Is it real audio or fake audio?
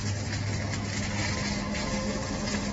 real